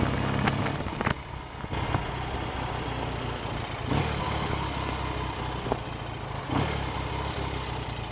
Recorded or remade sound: recorded